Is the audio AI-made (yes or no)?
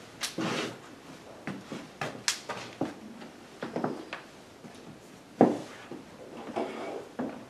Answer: no